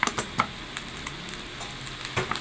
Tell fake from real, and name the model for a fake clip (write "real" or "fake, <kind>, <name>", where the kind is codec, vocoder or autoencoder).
real